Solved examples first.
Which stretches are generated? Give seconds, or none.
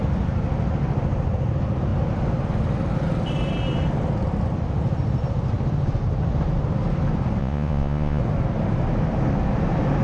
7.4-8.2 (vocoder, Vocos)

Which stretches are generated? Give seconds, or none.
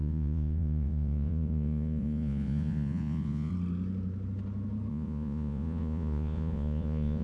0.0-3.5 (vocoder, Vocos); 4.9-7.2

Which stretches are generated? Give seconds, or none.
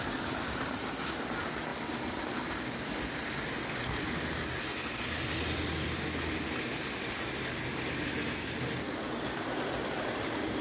none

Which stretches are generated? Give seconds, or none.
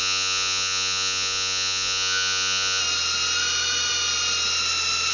0.0-2.8 (vocoder, Vocos)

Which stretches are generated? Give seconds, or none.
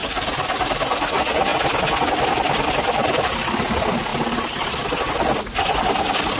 none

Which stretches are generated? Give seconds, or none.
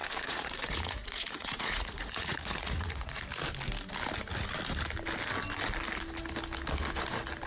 0.0-3.2 (vocoder, Vocos)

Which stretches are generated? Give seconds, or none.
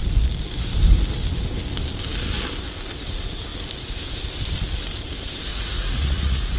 5.5-6.6 (vocoder, Vocos)